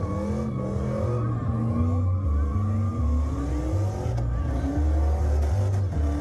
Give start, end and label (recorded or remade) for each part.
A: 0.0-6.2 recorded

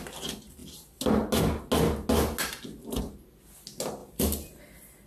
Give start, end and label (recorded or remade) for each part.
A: 0.0-4.0 recorded; 4.0-4.6 remade; 4.6-5.1 recorded

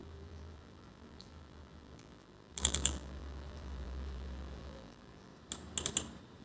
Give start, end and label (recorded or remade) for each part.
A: 0.0-5.3 remade; 5.3-6.4 recorded

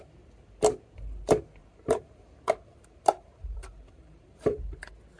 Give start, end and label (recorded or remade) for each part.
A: 0.0-1.6 recorded; 1.6-4.7 remade; 4.7-5.2 recorded

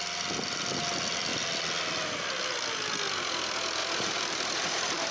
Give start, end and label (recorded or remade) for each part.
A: 0.0-3.8 recorded; 3.8-5.1 remade

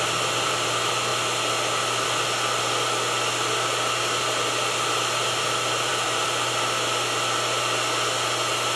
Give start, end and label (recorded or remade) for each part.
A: 0.0-5.9 recorded; 5.9-6.5 remade; 6.5-8.8 recorded

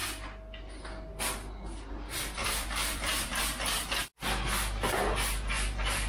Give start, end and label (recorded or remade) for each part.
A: 0.0-2.4 recorded; 2.4-3.3 remade; 3.3-6.1 recorded

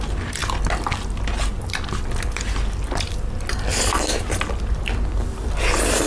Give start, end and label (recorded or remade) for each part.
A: 0.0-6.1 recorded